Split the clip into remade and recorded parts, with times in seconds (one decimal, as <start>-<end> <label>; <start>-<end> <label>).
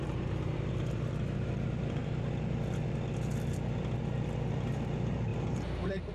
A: 0.0-2.0 remade; 2.0-4.5 recorded; 4.5-6.1 remade